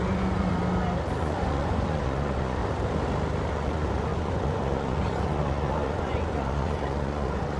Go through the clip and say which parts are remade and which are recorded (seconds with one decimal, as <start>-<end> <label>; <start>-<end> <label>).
0.0-0.6 remade; 0.6-1.2 recorded; 1.2-2.6 remade; 2.6-3.5 recorded; 3.5-7.6 remade